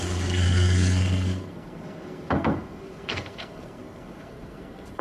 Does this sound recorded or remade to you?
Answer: remade